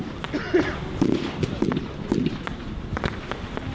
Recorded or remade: recorded